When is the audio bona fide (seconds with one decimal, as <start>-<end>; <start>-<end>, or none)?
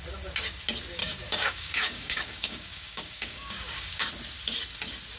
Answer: 0.0-1.0; 4.1-5.2